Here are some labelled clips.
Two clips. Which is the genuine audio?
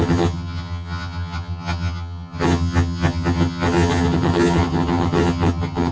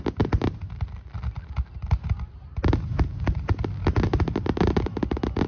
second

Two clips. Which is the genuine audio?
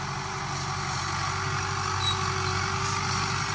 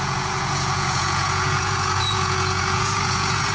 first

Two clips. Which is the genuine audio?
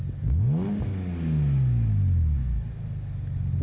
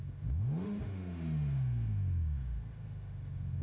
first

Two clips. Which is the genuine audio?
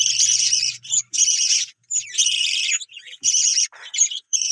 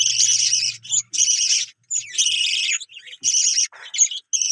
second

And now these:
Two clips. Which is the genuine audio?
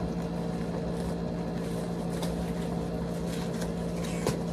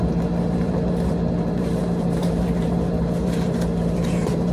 first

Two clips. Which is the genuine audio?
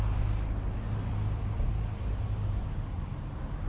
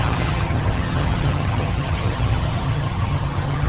first